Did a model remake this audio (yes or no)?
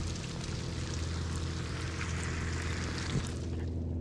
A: no